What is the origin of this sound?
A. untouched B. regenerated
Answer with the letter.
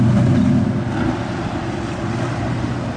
A